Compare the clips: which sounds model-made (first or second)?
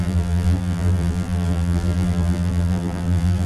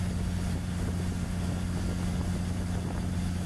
first